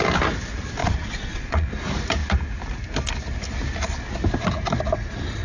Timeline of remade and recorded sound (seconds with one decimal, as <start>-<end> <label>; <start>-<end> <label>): 0.0-0.8 recorded; 0.8-1.7 remade; 1.7-5.4 recorded